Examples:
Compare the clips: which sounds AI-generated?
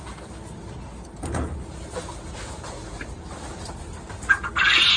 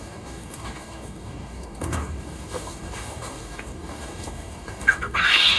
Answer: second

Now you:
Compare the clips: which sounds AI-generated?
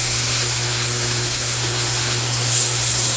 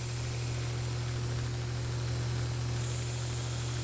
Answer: first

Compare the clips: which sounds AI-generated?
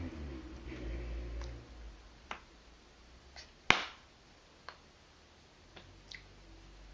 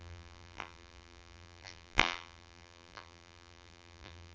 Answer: second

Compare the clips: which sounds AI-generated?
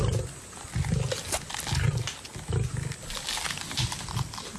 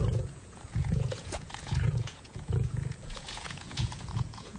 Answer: second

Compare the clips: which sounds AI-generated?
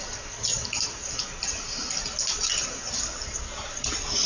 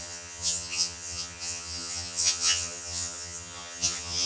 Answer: second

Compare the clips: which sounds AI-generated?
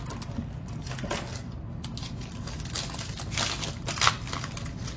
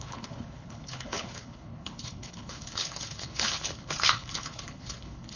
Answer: second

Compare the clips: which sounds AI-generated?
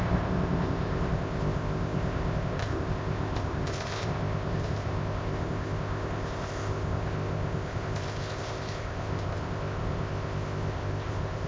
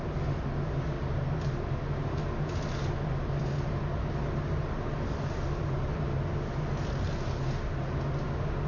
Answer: first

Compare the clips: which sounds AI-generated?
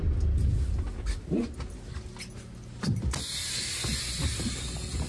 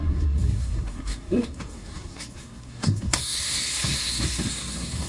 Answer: second